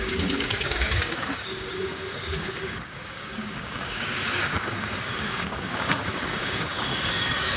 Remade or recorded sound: remade